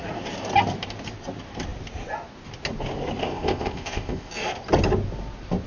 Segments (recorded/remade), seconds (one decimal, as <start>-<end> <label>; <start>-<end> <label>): 0.0-3.2 recorded; 3.2-4.3 remade; 4.3-5.7 recorded